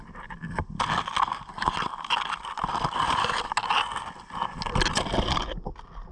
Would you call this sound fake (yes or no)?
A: no